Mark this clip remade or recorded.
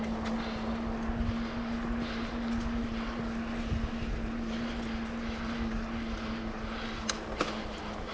recorded